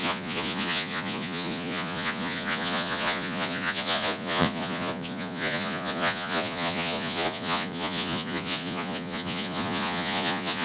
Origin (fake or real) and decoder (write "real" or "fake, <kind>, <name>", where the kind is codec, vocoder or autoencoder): fake, vocoder, Vocos